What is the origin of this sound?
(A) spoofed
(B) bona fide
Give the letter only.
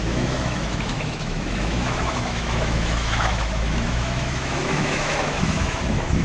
A